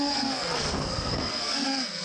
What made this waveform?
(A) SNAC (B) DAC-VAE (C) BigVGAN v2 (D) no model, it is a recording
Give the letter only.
A